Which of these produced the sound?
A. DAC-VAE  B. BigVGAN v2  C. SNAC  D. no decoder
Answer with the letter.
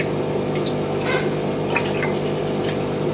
D